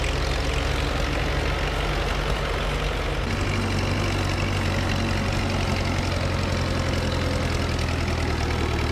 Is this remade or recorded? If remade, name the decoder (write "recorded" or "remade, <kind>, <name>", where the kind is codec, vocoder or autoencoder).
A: recorded